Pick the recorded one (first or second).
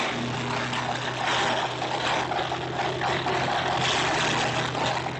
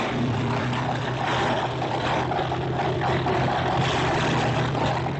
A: first